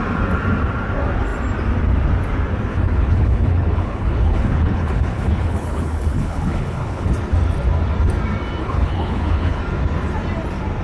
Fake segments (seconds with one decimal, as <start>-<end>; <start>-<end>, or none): 2.7-7.1; 8.6-9.6